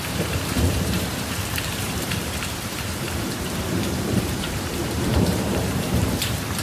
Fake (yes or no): yes